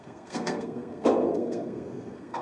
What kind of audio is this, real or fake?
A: fake